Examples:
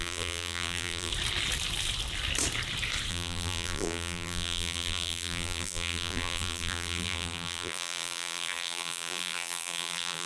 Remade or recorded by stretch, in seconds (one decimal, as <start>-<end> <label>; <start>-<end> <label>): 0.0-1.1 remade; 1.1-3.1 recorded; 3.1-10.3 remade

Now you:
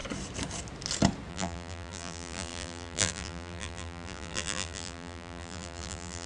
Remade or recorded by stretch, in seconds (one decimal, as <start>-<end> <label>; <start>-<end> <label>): 0.0-1.3 recorded; 1.3-6.3 remade

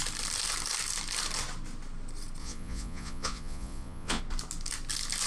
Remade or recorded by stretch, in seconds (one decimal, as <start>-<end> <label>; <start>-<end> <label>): 0.0-2.4 recorded; 2.4-4.2 remade; 4.2-5.3 recorded

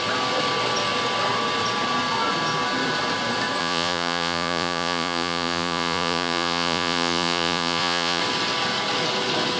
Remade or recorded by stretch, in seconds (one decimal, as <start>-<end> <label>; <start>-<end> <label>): 0.0-3.6 recorded; 3.6-8.2 remade; 8.2-9.6 recorded

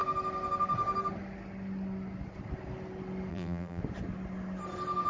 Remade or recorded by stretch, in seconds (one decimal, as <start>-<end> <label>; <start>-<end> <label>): 0.0-3.3 recorded; 3.3-3.8 remade; 3.8-5.1 recorded

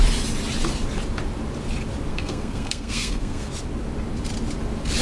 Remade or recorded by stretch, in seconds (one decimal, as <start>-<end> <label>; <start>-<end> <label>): 0.0-2.1 recorded; 2.1-3.5 remade; 3.5-5.0 recorded